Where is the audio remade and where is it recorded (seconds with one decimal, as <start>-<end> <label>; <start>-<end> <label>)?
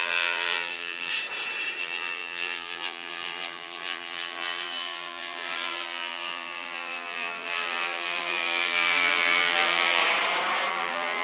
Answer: 0.0-1.1 remade; 1.1-1.8 recorded; 1.8-10.0 remade; 10.0-10.7 recorded; 10.7-11.2 remade